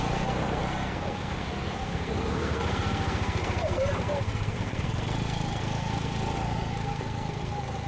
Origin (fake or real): fake